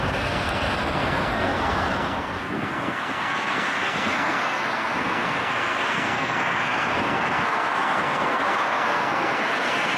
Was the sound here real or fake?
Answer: fake